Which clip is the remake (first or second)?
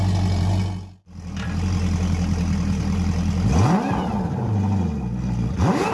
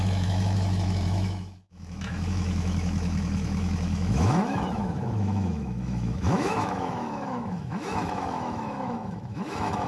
second